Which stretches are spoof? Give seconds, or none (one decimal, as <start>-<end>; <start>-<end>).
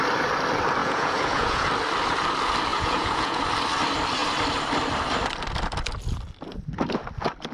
0.8-1.7; 2.7-3.4